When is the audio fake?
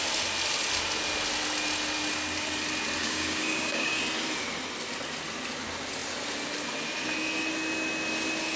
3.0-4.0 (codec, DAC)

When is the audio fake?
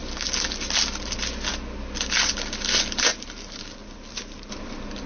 3.1-4.5 (vocoder, BigVGAN v2)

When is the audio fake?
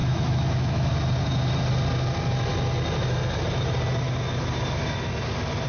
0.0-0.9 (autoencoder, DAC-VAE)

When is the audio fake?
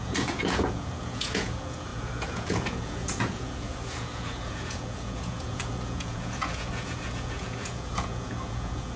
0.0-9.0 (vocoder, Vocos)